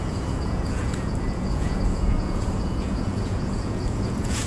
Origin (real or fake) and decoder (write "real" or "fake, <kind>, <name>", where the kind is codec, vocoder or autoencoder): fake, vocoder, Vocos